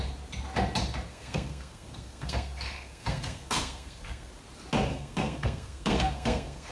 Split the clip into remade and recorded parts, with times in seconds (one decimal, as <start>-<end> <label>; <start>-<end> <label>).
0.0-1.1 recorded; 1.1-4.3 remade; 4.3-4.9 recorded; 4.9-6.7 remade

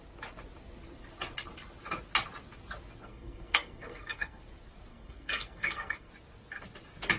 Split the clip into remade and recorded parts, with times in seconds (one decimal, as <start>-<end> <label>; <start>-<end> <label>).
0.0-3.0 recorded; 3.0-4.4 remade; 4.4-4.9 recorded; 4.9-6.1 remade; 6.1-7.2 recorded